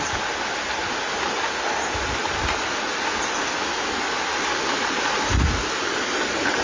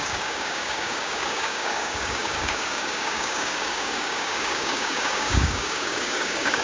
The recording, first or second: first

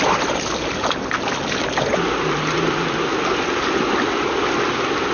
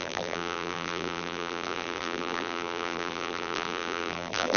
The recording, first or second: first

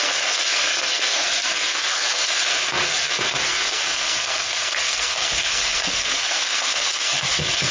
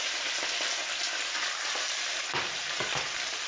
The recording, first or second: second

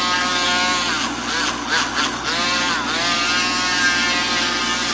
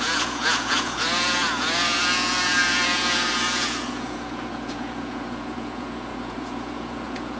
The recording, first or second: first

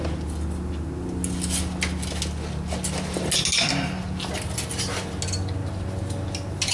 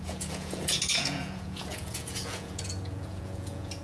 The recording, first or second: first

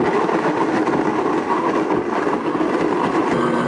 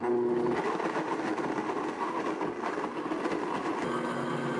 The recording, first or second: second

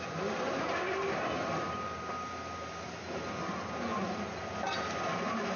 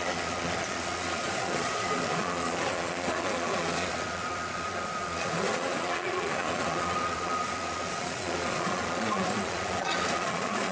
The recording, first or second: first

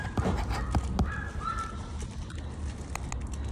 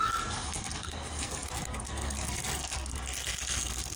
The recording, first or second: first